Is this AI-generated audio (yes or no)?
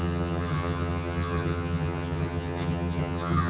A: yes